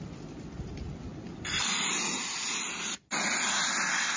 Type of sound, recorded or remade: recorded